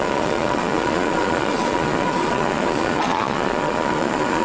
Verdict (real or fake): fake